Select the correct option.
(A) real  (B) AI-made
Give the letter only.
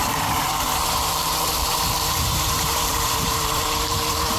B